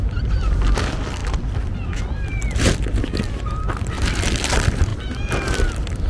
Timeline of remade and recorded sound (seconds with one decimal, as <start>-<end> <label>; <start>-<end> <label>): 0.0-1.2 remade; 1.2-4.0 recorded; 4.0-6.1 remade